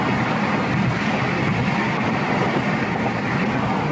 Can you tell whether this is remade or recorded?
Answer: recorded